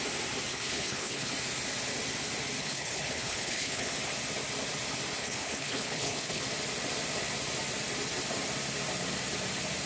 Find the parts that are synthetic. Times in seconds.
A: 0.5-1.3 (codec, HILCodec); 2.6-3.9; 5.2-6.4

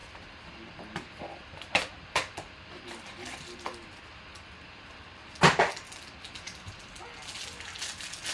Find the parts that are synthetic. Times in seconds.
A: none

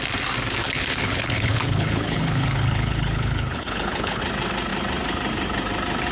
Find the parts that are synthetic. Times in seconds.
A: 0.6-4.2 (codec, HILCodec)

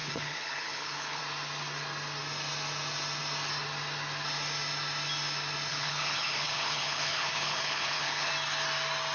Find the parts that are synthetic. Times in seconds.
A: 0.0-1.2 (codec, HILCodec); 5.7-8.3

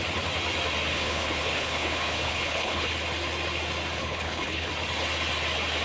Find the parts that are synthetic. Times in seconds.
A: 0.9-2.9 (codec, HILCodec); 4.0-4.7

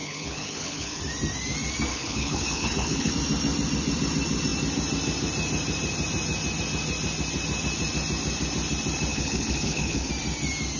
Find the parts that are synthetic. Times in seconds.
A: 0.0-1.0 (codec, HILCodec); 1.9-3.1; 9.1-10.1

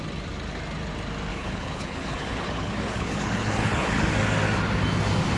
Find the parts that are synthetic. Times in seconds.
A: 1.3-4.1 (codec, HILCodec)